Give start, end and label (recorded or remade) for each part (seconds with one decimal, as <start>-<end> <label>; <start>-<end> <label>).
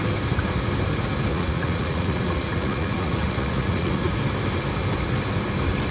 0.0-1.3 recorded; 1.3-4.1 remade; 4.1-5.9 recorded